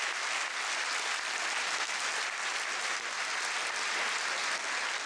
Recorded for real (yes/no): yes